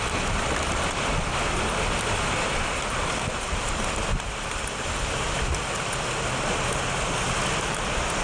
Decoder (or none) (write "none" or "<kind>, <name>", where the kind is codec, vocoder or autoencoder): vocoder, BigVGAN v2